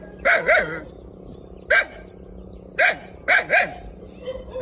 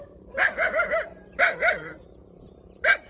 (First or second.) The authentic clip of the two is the first